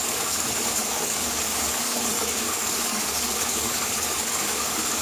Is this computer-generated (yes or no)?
yes